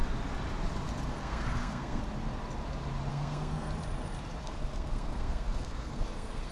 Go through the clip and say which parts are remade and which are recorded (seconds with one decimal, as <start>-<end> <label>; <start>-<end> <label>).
0.0-1.1 recorded; 1.1-2.0 remade; 2.0-3.1 recorded; 3.1-3.7 remade; 3.7-4.4 recorded; 4.4-6.5 remade